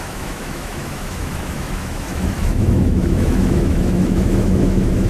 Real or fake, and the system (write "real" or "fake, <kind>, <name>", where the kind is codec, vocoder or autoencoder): fake, autoencoder, DAC-VAE